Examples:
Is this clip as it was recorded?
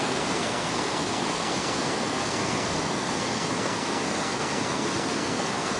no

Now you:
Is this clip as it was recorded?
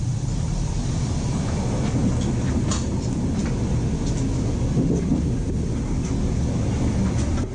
yes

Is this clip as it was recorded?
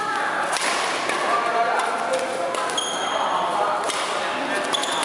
yes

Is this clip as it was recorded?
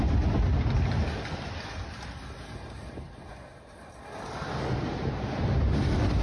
yes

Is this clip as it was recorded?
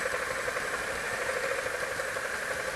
yes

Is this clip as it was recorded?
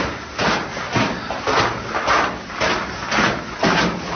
yes